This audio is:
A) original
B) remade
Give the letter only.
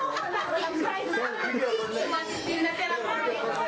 A